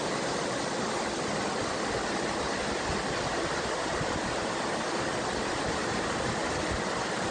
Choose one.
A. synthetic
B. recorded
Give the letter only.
B